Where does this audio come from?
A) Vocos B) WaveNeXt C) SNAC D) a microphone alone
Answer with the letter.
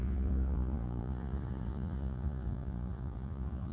A